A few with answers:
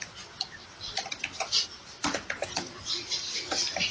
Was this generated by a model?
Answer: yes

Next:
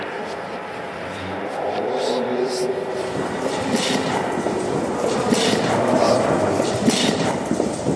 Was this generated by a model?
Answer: yes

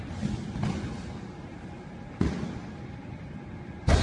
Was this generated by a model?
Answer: no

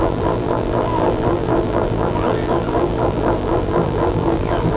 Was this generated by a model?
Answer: yes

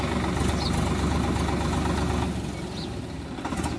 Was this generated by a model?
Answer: no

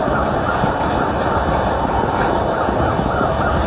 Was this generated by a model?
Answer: no